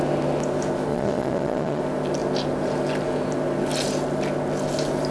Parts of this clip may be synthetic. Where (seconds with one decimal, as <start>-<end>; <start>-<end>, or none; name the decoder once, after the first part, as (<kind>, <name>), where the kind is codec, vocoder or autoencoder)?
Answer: 0.9-1.8 (vocoder, Vocos)